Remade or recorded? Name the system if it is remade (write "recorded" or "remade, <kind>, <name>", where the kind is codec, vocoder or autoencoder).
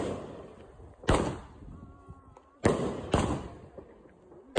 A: recorded